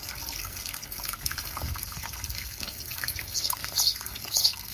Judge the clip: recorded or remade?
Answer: remade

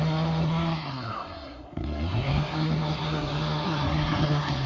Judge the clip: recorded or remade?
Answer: remade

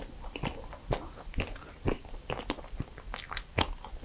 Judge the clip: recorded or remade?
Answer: recorded